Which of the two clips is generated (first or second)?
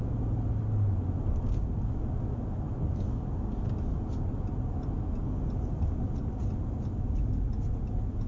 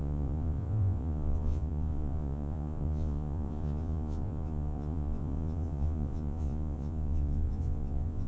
second